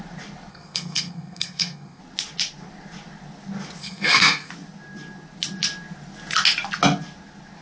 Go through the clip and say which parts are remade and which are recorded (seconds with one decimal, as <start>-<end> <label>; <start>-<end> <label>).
0.0-0.5 recorded; 0.5-2.0 remade; 2.0-3.8 recorded; 3.8-4.5 remade; 4.5-7.6 recorded

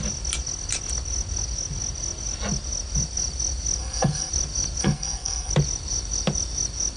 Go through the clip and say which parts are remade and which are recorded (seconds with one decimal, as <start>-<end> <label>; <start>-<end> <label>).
0.0-3.8 recorded; 3.8-4.3 remade; 4.3-4.8 recorded; 4.8-5.5 remade; 5.5-7.0 recorded

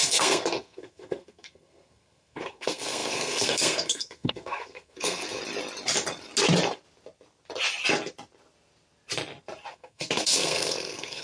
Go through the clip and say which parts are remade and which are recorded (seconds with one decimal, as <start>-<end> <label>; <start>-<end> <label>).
0.0-5.4 remade; 5.4-9.7 recorded; 9.7-11.2 remade

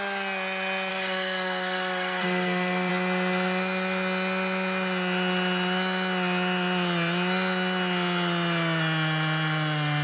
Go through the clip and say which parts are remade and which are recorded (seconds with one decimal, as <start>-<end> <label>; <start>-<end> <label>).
0.0-0.9 recorded; 0.9-2.9 remade; 2.9-10.0 recorded

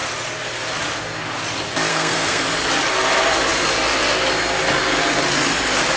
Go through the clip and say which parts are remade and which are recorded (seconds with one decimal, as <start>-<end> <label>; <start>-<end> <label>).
0.0-1.9 recorded; 1.9-2.4 remade; 2.4-6.0 recorded

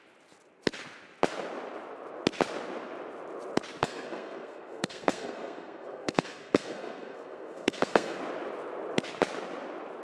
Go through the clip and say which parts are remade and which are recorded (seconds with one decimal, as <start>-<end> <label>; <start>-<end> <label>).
0.0-3.8 recorded; 3.8-8.2 remade; 8.2-10.0 recorded

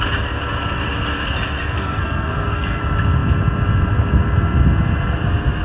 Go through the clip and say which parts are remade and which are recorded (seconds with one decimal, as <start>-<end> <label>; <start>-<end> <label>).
0.0-1.6 recorded; 1.6-2.8 remade; 2.8-5.6 recorded

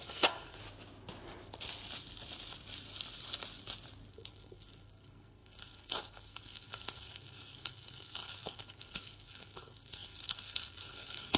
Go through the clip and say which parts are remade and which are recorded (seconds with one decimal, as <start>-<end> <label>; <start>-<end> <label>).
0.0-0.6 remade; 0.6-4.1 recorded; 4.1-11.4 remade